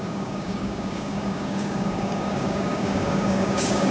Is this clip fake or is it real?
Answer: fake